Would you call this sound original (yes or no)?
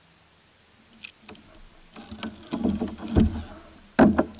yes